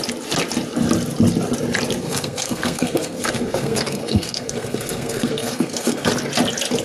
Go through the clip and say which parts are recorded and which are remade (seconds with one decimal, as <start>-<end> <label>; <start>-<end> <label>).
0.0-2.0 recorded; 2.0-6.1 remade; 6.1-6.8 recorded